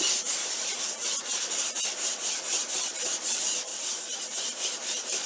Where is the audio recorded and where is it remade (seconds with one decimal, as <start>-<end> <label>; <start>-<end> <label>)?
0.0-3.7 recorded; 3.7-5.3 remade